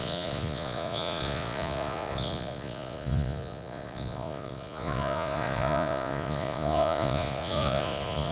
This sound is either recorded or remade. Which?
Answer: remade